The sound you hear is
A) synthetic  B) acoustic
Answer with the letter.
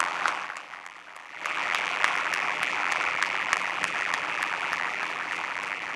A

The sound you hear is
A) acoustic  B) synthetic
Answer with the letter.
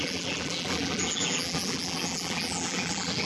B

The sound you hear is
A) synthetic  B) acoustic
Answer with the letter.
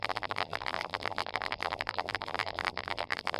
A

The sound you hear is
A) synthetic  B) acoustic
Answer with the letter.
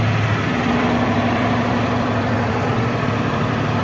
A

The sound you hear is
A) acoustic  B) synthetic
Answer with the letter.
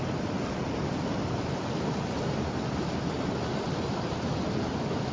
A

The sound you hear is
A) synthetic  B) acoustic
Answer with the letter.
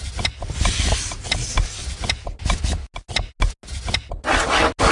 B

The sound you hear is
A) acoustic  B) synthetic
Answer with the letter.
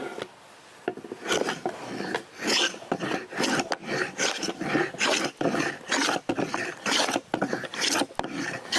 A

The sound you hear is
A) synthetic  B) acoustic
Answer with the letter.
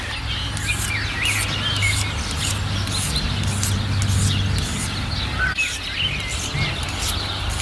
B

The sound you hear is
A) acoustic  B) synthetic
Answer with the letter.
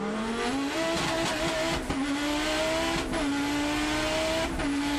A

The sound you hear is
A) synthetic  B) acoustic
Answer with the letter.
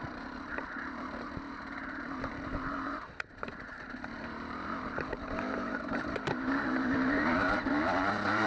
A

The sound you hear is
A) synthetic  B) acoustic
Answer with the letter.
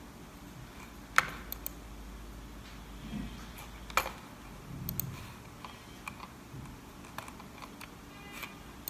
B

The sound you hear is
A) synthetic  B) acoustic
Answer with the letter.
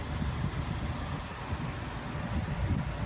B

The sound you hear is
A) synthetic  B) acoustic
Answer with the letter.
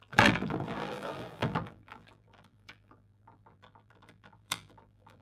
A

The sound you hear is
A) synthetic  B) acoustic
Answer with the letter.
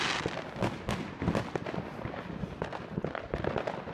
B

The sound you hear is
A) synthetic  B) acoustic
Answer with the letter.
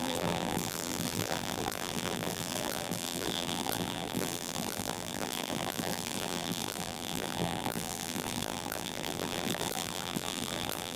A